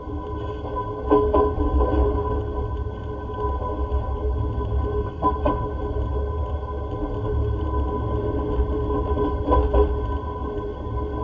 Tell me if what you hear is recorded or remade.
recorded